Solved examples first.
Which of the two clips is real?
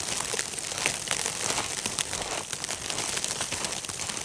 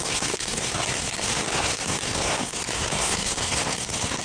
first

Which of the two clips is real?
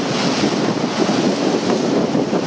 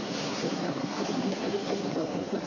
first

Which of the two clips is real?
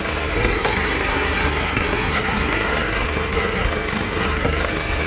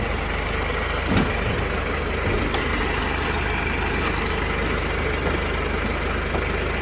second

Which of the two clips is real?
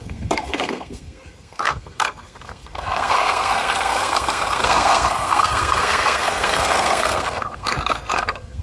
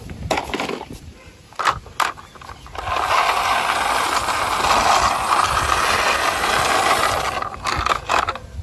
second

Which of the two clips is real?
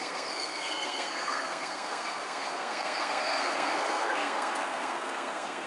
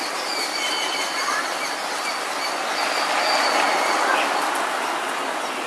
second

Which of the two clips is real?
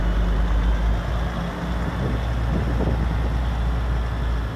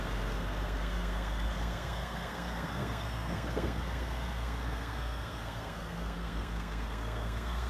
first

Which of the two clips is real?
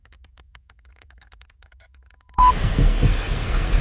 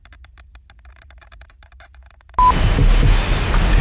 second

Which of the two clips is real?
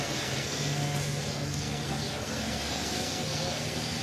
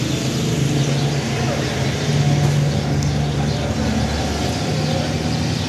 second